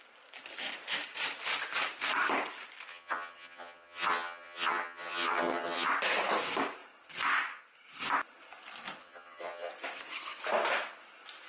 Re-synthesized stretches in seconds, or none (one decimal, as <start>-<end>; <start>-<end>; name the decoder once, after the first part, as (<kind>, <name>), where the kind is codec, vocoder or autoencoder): 2.9-5.9 (vocoder, HiFi-GAN); 9.0-9.7